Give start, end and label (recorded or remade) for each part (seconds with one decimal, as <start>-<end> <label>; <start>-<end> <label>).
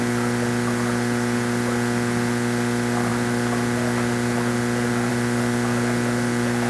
0.0-6.7 recorded